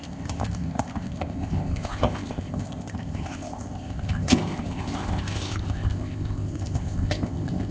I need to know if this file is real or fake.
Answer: fake